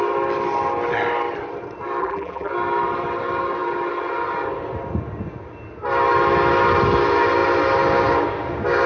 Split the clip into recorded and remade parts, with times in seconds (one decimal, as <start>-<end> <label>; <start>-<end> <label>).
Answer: 0.0-2.0 recorded; 2.0-2.5 remade; 2.5-8.9 recorded